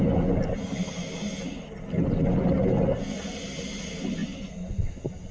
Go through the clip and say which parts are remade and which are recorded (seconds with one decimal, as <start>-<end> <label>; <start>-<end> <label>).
0.0-5.3 recorded